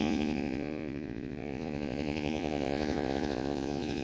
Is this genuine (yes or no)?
no